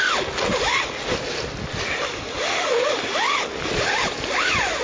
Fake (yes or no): no